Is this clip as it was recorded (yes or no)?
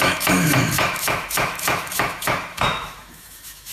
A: no